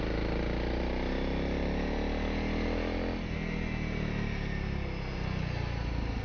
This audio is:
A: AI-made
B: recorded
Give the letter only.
B